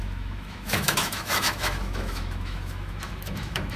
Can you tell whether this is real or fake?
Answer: fake